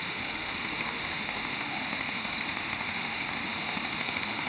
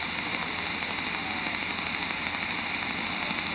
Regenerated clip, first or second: first